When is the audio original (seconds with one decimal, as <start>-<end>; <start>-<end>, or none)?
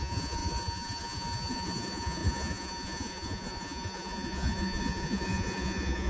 none